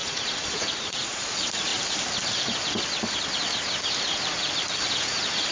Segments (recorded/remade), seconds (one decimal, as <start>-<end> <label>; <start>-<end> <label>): 0.0-1.7 remade; 1.7-5.0 recorded; 5.0-5.5 remade